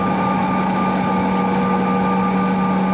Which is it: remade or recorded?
recorded